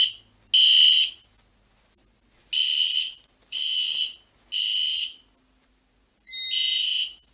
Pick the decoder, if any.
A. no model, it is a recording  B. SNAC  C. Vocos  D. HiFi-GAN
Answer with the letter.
A